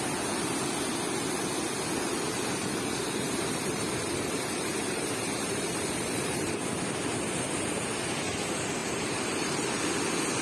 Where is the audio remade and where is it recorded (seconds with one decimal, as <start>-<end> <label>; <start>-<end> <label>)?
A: 0.0-2.6 recorded; 2.6-6.5 remade; 6.5-8.8 recorded; 8.8-9.7 remade; 9.7-10.4 recorded